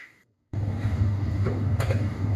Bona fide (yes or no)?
no